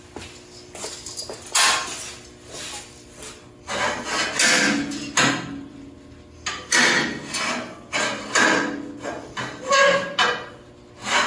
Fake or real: real